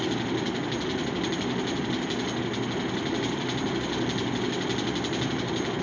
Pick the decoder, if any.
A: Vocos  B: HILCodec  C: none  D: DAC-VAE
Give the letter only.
C